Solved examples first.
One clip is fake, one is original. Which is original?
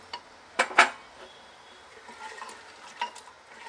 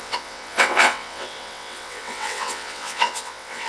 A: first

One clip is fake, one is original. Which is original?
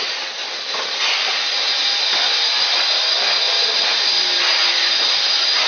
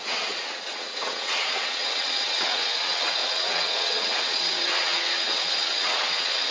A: first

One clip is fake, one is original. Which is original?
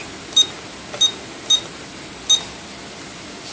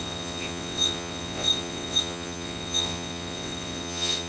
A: first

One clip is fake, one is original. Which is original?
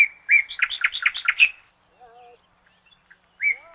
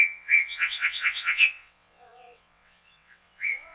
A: first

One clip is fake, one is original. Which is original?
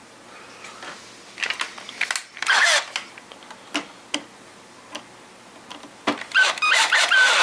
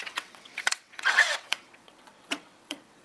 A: first